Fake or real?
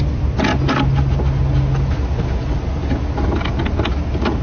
real